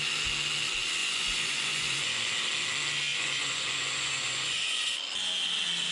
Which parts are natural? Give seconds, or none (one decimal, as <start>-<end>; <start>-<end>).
0.0-1.0; 2.3-3.1; 4.9-5.9